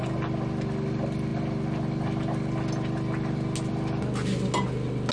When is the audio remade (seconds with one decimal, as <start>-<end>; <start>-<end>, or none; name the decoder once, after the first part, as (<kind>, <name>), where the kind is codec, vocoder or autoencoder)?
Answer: none